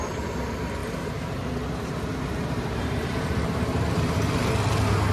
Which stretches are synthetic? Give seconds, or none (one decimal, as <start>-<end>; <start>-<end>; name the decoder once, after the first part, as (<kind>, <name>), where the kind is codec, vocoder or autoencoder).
0.8-3.9 (vocoder, BigVGAN v2)